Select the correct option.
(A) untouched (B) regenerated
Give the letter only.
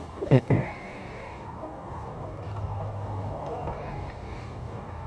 B